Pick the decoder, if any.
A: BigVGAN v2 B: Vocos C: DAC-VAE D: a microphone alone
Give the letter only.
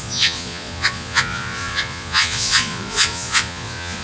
B